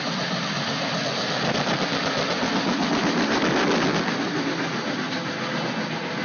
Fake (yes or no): no